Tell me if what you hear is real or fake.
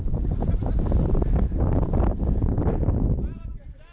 fake